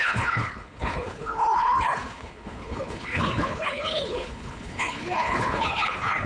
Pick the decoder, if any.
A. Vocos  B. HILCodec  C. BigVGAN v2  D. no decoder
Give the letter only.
B